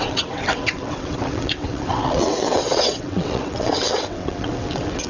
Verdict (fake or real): fake